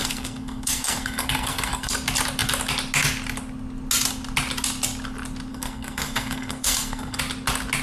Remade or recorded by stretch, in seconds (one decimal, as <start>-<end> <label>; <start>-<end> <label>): 0.0-1.9 remade; 1.9-5.5 recorded; 5.5-7.2 remade; 7.2-7.8 recorded